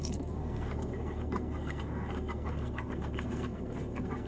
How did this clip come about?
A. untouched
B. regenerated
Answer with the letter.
B